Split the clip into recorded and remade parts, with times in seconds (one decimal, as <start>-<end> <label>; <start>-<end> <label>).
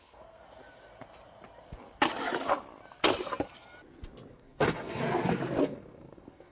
0.0-0.4 remade; 0.4-4.3 recorded; 4.3-5.0 remade; 5.0-5.6 recorded; 5.6-6.5 remade